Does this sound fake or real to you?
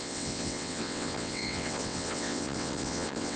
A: fake